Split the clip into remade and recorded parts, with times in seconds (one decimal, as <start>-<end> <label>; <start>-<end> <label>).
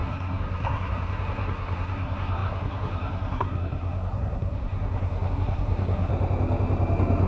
0.0-6.1 remade; 6.1-7.3 recorded